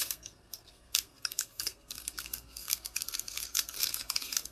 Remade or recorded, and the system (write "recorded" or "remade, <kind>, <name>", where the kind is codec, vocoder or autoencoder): remade, codec, SNAC